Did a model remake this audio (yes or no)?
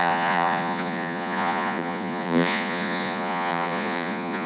yes